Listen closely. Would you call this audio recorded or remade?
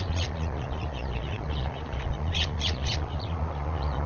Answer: remade